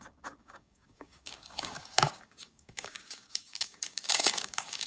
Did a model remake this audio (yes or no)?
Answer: yes